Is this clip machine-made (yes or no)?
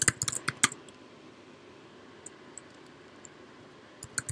no